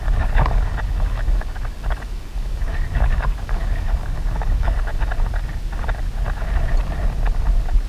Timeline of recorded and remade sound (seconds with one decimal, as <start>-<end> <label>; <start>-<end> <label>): 0.0-4.9 remade; 4.9-7.9 recorded